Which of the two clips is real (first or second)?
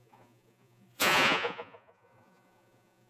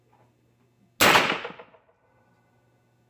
second